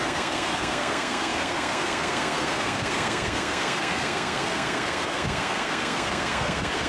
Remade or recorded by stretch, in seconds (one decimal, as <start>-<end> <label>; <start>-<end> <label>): 0.0-6.9 remade